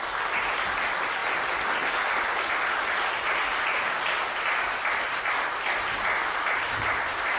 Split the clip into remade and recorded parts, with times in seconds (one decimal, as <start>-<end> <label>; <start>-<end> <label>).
0.0-6.2 recorded; 6.2-7.4 remade

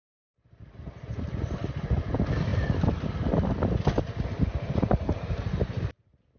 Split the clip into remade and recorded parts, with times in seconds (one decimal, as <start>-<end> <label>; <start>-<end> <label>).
0.0-6.4 recorded

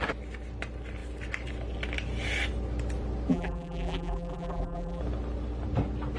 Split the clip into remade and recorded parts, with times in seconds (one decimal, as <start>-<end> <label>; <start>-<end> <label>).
0.0-3.3 recorded; 3.3-5.0 remade; 5.0-6.2 recorded

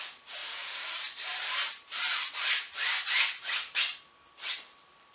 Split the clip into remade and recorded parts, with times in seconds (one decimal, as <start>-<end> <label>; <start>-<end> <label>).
0.0-0.4 recorded; 0.4-2.5 remade; 2.5-5.1 recorded

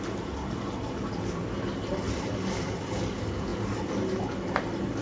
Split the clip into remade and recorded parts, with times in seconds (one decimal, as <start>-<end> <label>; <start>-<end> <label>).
0.0-1.9 recorded; 1.9-2.8 remade; 2.8-5.0 recorded

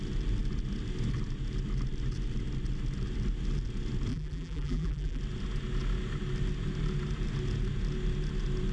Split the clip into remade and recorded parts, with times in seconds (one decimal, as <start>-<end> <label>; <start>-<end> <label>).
0.0-4.1 recorded; 4.1-5.2 remade; 5.2-8.7 recorded

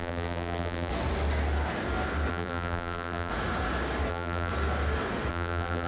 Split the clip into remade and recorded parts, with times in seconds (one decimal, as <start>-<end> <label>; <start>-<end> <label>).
0.0-0.9 remade; 0.9-2.3 recorded; 2.3-3.3 remade; 3.3-4.1 recorded; 4.1-4.5 remade; 4.5-5.3 recorded; 5.3-5.9 remade